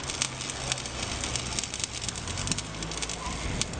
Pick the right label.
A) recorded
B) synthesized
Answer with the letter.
A